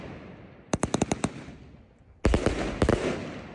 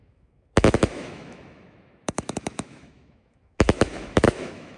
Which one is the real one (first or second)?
first